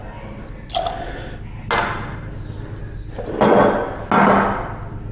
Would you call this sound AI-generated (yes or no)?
no